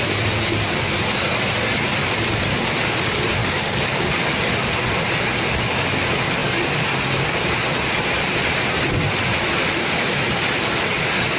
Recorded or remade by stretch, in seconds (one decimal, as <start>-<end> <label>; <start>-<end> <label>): 0.0-3.4 recorded; 3.4-4.1 remade; 4.1-11.4 recorded